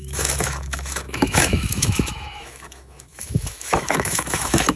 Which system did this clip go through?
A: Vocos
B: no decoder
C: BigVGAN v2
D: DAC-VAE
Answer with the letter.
D